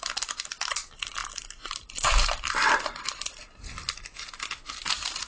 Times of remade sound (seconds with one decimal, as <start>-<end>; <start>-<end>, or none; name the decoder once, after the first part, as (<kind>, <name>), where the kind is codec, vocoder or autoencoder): none